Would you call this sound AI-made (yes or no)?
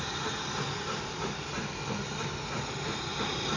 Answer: no